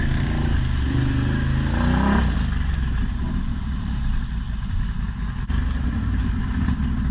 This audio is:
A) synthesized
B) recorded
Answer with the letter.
B